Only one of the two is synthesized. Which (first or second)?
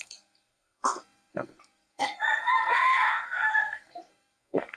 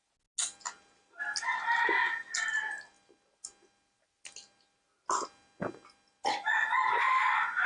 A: first